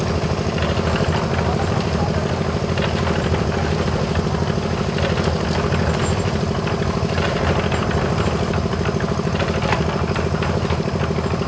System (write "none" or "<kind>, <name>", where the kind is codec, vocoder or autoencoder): none